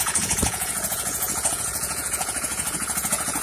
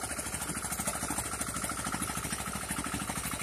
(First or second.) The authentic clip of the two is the second